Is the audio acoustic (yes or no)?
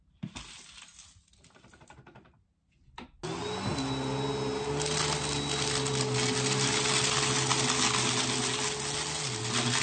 yes